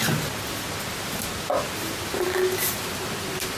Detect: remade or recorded recorded